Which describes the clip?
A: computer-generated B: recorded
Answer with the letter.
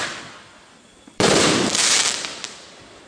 A